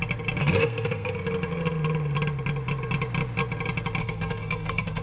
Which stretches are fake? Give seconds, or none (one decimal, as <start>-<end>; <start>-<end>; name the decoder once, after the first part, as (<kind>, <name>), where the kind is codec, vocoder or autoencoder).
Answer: 0.4-1.1 (codec, SNAC); 4.0-5.0

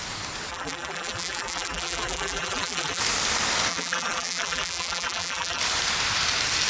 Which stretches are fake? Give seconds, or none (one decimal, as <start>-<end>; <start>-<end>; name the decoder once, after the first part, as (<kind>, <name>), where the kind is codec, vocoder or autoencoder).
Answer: 0.5-3.0 (vocoder, BigVGAN v2); 3.7-5.6

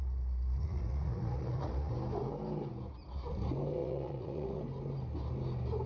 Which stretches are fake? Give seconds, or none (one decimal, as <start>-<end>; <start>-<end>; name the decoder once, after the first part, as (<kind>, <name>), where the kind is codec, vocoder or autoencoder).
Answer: 0.6-1.9 (vocoder, Vocos); 3.8-4.6

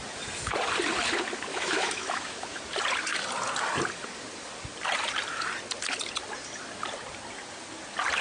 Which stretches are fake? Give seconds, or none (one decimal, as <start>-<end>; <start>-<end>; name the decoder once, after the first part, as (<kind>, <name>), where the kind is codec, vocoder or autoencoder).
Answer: 1.5-2.6 (autoencoder, DAC-VAE)

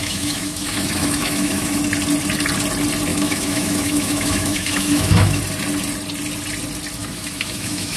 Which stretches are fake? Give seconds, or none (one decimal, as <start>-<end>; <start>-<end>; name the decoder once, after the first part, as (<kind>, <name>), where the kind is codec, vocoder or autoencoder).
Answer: 0.0-1.8 (autoencoder, DAC-VAE); 3.1-5.4; 7.0-8.0

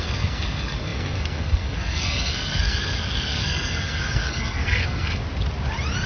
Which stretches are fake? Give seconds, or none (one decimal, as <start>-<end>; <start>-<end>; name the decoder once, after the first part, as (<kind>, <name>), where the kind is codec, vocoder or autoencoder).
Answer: 0.0-5.2 (codec, SNAC)

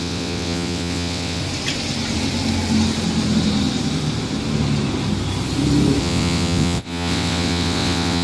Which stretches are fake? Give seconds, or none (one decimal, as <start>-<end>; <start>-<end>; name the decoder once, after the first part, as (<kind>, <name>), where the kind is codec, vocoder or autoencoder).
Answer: 0.0-1.4 (vocoder, WaveNeXt); 6.0-8.2

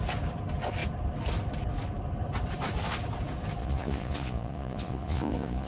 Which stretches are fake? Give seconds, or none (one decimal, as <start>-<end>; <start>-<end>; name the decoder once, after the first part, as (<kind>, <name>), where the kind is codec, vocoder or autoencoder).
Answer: 3.6-5.7 (vocoder, Vocos)